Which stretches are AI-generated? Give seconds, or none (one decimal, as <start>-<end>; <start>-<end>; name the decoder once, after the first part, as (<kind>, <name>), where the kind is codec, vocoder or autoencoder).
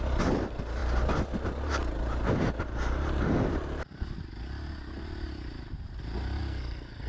6.4-7.1 (codec, SNAC)